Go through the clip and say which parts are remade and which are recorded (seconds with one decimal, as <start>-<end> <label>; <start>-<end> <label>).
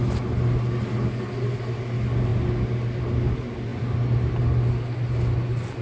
0.0-5.8 recorded